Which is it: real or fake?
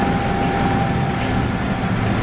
real